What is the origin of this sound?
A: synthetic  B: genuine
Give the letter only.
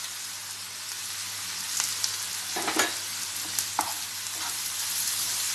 B